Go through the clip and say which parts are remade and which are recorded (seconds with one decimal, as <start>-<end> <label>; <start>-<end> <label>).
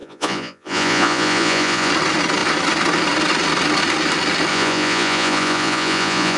0.0-1.9 remade; 1.9-4.5 recorded; 4.5-6.4 remade